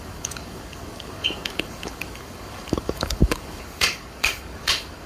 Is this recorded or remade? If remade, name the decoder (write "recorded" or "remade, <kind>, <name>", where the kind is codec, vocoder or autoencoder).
remade, codec, DAC